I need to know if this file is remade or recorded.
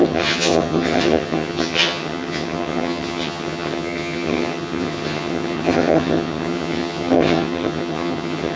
remade